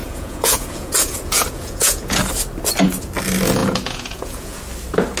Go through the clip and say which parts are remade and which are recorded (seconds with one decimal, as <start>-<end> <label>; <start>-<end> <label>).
0.0-2.2 remade; 2.2-3.6 recorded; 3.6-4.6 remade; 4.6-5.2 recorded